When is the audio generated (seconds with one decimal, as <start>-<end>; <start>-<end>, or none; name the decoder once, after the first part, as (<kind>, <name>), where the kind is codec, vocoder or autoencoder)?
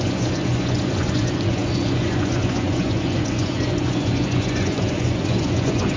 0.0-6.0 (vocoder, Vocos)